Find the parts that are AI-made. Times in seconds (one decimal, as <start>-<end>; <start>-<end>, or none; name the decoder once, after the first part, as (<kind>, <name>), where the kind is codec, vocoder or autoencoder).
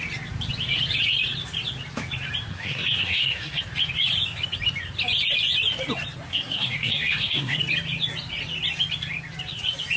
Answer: 2.5-3.6 (codec, SNAC); 6.3-7.6